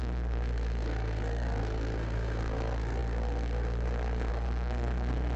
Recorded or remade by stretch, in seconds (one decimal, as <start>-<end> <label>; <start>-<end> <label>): 0.0-5.4 remade